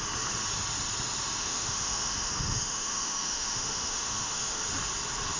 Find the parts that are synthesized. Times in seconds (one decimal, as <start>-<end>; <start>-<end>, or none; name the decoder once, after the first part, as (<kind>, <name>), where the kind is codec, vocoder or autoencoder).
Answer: 1.4-4.6 (autoencoder, DAC-VAE)